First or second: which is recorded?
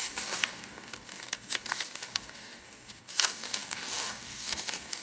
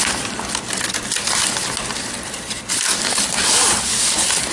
second